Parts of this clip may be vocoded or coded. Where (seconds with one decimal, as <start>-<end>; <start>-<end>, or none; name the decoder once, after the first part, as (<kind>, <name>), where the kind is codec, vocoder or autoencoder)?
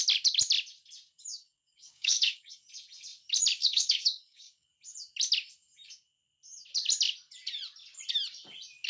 1.3-2.6 (codec, DAC); 3.6-4.7